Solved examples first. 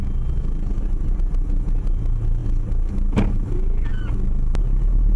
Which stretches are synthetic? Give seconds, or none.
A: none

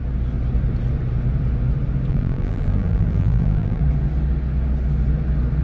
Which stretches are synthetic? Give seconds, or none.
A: 2.1-3.8 (vocoder, BigVGAN v2)

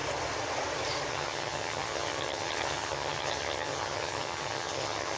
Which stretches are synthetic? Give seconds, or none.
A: 1.1-5.2 (vocoder, HiFi-GAN)

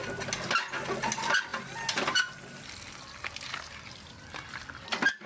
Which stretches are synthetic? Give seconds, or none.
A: none

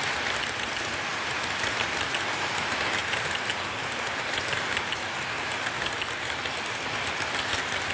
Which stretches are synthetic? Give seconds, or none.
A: 0.0-5.0 (vocoder, BigVGAN v2); 6.6-7.9

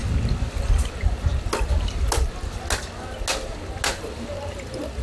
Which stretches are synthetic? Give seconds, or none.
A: none

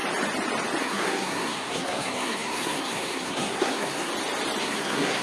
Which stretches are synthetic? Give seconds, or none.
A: 0.8-4.1 (codec, SNAC); 4.6-5.2